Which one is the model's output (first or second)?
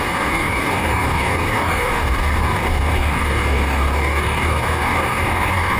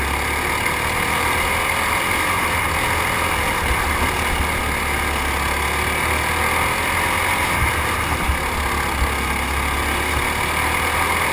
first